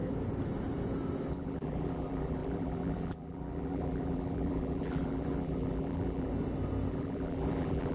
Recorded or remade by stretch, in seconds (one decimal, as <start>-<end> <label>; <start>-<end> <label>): 0.0-1.3 recorded; 1.3-6.3 remade; 6.3-6.9 recorded; 6.9-7.9 remade